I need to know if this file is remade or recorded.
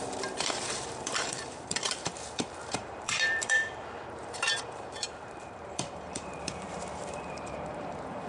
remade